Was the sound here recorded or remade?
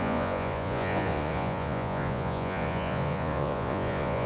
remade